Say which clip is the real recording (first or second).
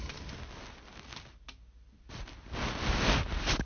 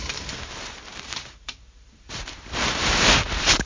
first